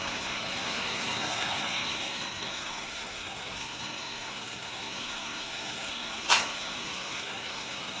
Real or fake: fake